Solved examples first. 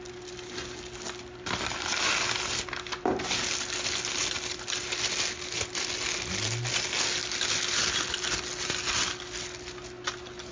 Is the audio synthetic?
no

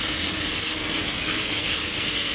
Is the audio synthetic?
yes